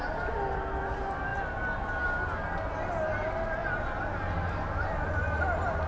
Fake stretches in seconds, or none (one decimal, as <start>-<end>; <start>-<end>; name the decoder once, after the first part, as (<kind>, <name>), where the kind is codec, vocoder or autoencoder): none